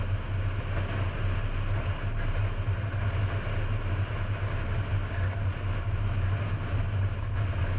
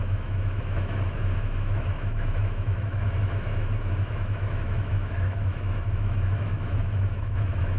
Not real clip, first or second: second